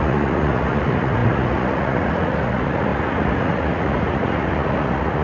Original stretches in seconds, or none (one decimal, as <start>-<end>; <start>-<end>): none